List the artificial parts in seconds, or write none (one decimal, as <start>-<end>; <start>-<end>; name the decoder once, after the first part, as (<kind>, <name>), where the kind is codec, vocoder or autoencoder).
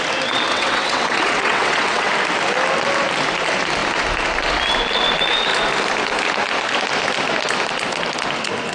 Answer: 0.5-2.1 (vocoder, WaveNeXt)